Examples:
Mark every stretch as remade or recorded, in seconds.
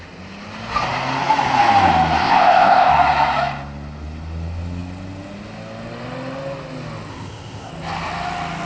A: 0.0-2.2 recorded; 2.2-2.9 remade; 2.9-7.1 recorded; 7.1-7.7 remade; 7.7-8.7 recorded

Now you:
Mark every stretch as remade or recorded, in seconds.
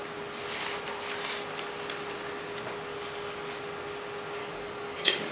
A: 0.0-4.4 recorded; 4.4-5.3 remade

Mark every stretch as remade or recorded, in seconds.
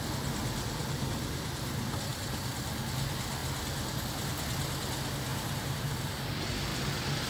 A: 0.0-2.1 recorded; 2.1-2.7 remade; 2.7-5.3 recorded; 5.3-6.3 remade; 6.3-7.3 recorded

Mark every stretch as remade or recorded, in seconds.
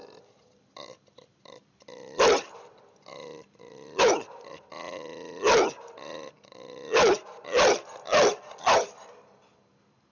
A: 0.0-4.0 remade; 4.0-10.1 recorded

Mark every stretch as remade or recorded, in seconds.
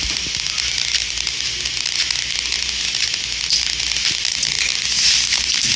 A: 0.0-5.8 recorded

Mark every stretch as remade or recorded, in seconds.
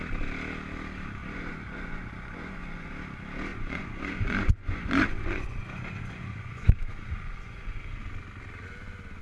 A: 0.0-1.2 recorded; 1.2-2.9 remade; 2.9-3.5 recorded; 3.5-8.0 remade; 8.0-9.2 recorded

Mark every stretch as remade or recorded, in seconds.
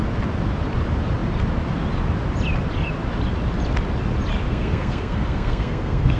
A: 0.0-4.5 recorded; 4.5-6.2 remade